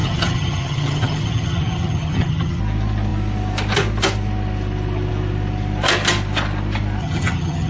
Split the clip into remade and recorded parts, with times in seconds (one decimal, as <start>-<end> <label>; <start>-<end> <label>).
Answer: 0.0-2.6 remade; 2.6-7.0 recorded; 7.0-7.7 remade